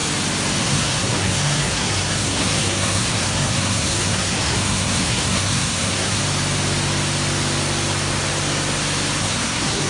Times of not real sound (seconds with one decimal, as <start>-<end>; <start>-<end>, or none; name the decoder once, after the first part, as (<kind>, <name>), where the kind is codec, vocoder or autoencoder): 0.6-6.2 (codec, SNAC); 9.2-9.9